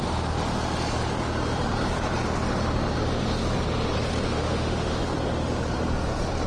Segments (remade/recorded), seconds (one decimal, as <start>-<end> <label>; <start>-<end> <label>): 0.0-4.3 recorded; 4.3-5.0 remade; 5.0-6.5 recorded